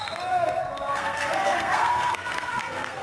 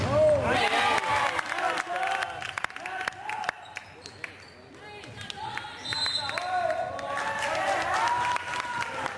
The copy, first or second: first